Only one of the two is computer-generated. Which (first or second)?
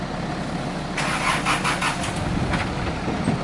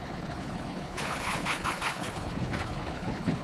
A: second